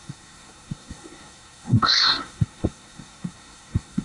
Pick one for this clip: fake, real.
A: fake